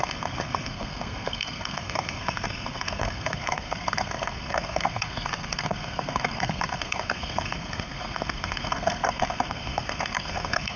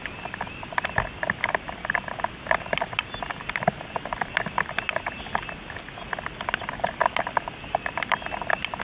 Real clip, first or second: second